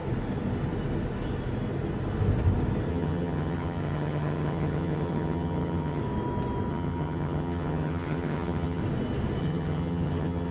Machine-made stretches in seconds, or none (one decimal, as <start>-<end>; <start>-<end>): 2.9-6.0; 6.7-8.8; 9.4-10.5